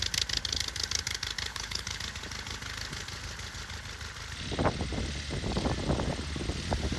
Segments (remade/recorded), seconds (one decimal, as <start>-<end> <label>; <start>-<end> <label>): 0.0-1.5 recorded; 1.5-2.0 remade; 2.0-7.0 recorded